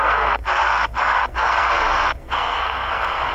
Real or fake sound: fake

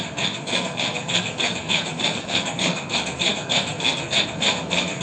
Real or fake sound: fake